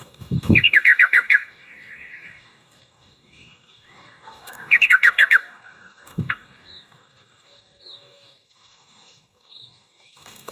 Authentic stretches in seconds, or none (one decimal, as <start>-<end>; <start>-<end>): none